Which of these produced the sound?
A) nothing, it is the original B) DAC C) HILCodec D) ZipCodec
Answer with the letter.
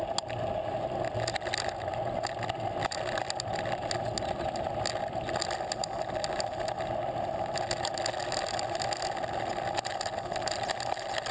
A